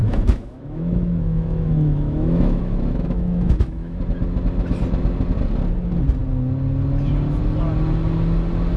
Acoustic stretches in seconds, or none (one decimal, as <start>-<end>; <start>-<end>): 4.0-8.8